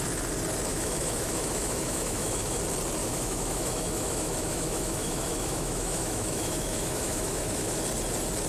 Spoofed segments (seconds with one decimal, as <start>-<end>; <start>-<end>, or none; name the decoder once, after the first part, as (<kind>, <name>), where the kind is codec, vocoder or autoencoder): 0.7-2.6 (autoencoder, DAC-VAE); 3.0-7.8